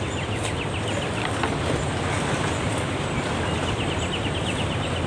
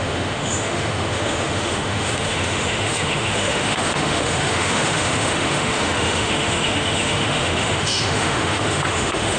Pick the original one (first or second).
first